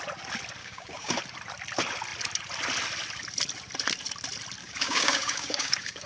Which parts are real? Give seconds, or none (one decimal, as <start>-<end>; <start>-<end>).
0.0-0.6; 1.2-4.6